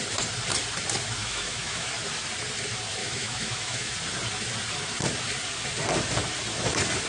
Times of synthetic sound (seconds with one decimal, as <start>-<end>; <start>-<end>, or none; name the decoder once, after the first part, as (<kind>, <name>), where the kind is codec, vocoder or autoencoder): 1.2-1.9 (autoencoder, DAC-VAE); 3.0-3.9